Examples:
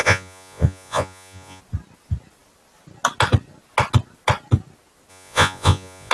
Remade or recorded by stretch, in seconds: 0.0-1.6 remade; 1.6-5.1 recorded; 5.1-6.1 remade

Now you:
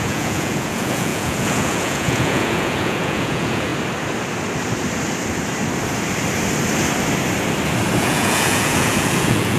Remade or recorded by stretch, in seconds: 0.0-3.7 remade; 3.7-8.0 recorded; 8.0-9.6 remade

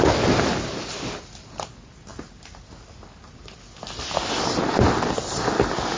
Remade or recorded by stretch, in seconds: 0.0-6.0 recorded

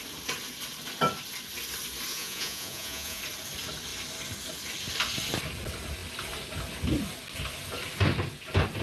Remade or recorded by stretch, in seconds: 0.0-2.1 recorded; 2.1-3.2 remade; 3.2-8.8 recorded

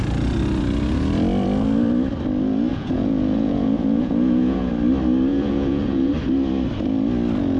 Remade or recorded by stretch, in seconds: 0.0-2.7 recorded; 2.7-4.7 remade; 4.7-5.3 recorded; 5.3-6.1 remade; 6.1-7.6 recorded

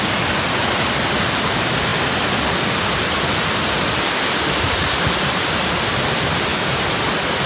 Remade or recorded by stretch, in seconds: 0.0-7.5 recorded